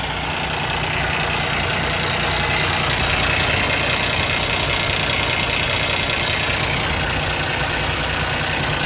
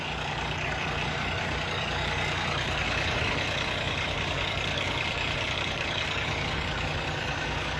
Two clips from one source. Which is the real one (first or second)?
first